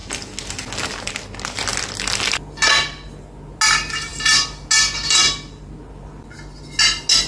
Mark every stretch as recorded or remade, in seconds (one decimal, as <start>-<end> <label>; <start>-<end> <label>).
0.0-7.3 recorded